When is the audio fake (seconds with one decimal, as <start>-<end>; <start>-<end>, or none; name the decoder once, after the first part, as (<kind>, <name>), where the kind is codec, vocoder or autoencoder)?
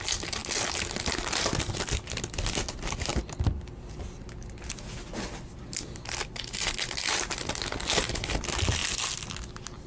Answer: none